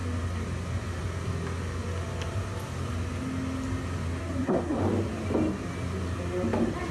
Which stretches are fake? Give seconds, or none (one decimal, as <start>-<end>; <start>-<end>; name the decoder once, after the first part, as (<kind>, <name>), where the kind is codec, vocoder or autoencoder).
4.2-4.8 (codec, SNAC)